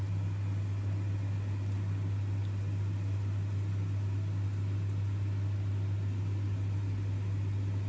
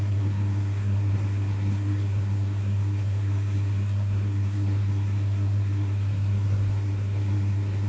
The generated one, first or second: second